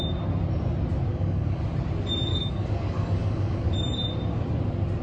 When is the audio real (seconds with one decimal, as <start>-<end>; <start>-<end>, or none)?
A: 0.0-1.1; 1.6-2.3; 3.7-5.0